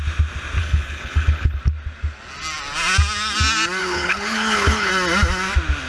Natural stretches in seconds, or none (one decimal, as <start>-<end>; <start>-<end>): 0.0-0.6; 1.6-3.8; 4.9-5.9